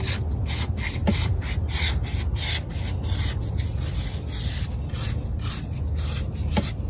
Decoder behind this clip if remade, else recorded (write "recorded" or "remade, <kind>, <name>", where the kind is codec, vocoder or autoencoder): recorded